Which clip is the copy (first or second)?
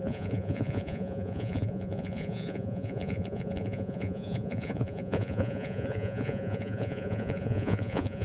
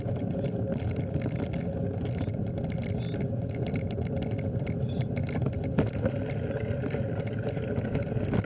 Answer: first